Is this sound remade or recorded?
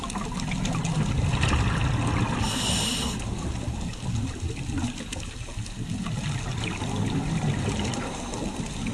recorded